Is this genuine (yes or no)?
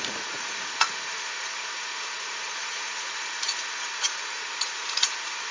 no